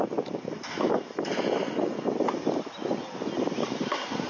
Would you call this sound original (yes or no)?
yes